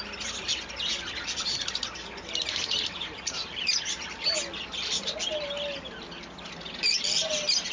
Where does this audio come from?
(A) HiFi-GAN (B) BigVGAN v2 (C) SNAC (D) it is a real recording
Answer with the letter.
D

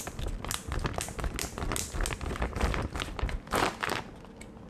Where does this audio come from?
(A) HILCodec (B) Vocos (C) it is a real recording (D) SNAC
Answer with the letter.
C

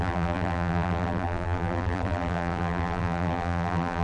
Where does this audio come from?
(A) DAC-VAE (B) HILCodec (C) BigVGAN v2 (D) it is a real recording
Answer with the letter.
C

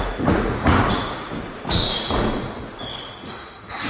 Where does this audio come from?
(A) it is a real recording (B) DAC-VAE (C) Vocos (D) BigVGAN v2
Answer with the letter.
C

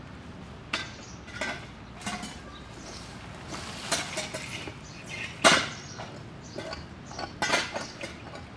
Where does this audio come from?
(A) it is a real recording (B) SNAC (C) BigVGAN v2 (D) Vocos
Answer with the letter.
A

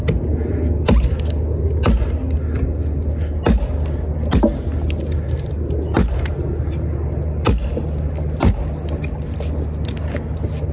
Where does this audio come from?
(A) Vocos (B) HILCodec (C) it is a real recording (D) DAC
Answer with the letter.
C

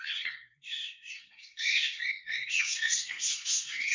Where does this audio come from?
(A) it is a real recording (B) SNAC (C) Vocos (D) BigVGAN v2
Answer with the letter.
B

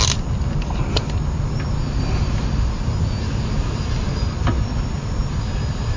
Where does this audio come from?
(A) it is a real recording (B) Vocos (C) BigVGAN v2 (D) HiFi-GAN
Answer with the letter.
A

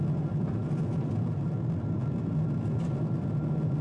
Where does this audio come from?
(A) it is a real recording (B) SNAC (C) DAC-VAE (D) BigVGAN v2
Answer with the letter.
A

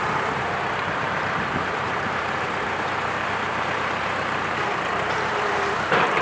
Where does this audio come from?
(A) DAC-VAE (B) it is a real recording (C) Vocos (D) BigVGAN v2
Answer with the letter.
D